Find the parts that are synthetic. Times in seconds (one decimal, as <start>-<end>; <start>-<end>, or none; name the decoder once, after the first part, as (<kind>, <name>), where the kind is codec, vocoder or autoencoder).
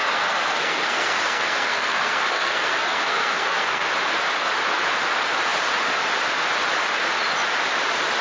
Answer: 0.0-3.9 (codec, SNAC)